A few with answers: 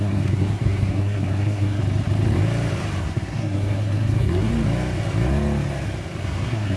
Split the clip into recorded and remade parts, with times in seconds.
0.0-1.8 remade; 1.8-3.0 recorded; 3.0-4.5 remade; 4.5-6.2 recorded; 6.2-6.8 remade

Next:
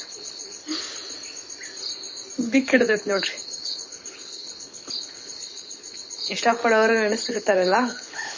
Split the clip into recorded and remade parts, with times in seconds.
0.0-0.6 remade; 0.6-2.4 recorded; 2.4-6.6 remade; 6.6-7.3 recorded; 7.3-8.4 remade